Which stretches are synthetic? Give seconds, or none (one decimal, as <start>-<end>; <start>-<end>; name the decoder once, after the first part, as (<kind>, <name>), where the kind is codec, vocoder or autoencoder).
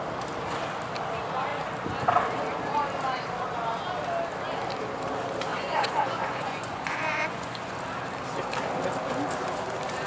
5.5-7.8 (vocoder, Vocos)